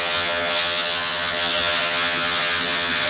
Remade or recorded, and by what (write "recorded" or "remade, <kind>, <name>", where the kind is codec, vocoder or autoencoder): remade, vocoder, HiFi-GAN